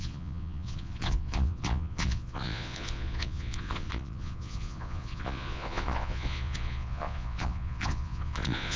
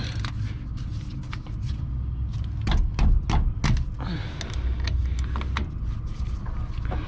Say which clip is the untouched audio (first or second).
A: second